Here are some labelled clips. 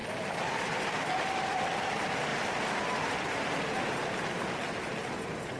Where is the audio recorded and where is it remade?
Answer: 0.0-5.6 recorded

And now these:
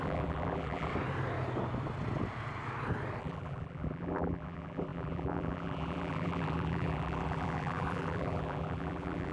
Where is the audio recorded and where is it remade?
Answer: 0.0-0.9 remade; 0.9-3.2 recorded; 3.2-9.3 remade